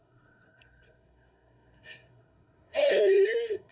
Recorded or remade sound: remade